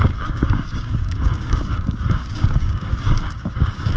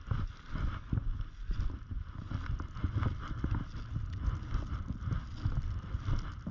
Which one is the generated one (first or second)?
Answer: first